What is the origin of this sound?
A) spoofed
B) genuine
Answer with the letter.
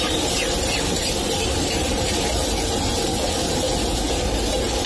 B